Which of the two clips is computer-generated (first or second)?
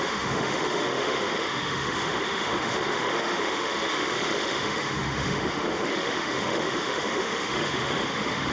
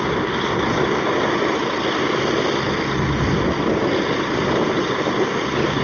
first